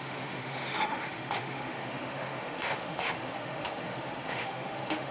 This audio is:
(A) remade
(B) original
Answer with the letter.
A